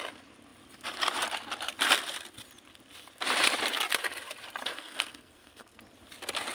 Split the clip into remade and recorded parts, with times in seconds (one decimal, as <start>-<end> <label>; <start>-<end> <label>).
0.0-4.7 recorded; 4.7-5.8 remade; 5.8-6.5 recorded